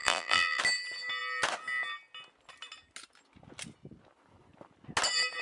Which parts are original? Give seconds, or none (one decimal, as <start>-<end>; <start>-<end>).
0.6-5.4